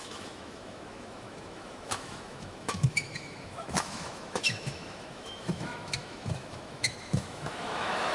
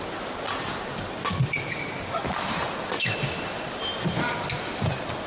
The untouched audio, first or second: second